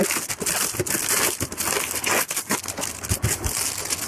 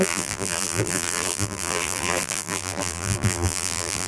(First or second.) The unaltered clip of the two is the first